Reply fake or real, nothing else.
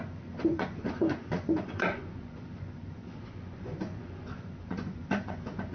fake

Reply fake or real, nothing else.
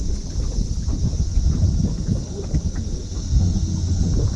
real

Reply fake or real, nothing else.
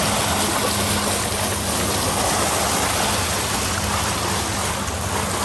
real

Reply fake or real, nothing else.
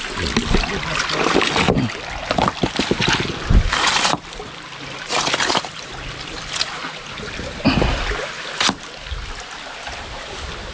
real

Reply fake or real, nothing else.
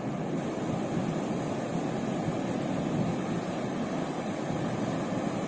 real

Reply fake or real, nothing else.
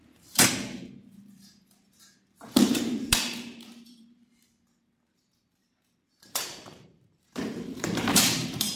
fake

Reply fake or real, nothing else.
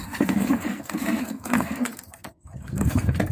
fake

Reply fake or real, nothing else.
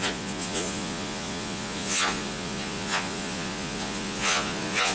fake